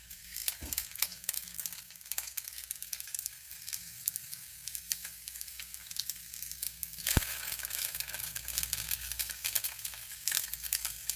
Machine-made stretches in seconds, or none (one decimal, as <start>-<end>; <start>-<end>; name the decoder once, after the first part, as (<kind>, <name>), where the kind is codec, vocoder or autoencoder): 0.0-11.2 (codec, SNAC)